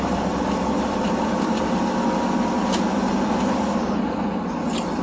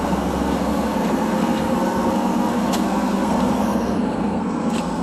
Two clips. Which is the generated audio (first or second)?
second